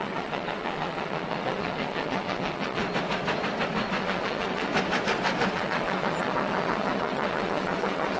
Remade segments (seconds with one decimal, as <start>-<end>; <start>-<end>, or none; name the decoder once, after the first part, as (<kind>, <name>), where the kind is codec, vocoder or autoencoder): 0.0-2.8 (vocoder, WaveNeXt); 4.0-4.7; 5.5-8.2